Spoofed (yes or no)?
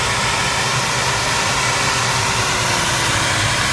no